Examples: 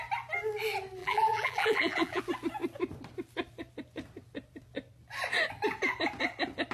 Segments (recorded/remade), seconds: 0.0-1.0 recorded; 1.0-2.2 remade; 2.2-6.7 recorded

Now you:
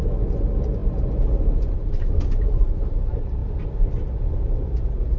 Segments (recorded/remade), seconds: 0.0-3.4 remade; 3.4-3.9 recorded; 3.9-5.2 remade

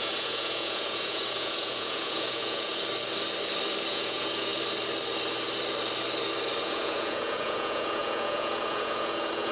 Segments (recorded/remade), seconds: 0.0-2.7 remade; 2.7-3.9 recorded; 3.9-4.5 remade; 4.5-6.6 recorded; 6.6-9.5 remade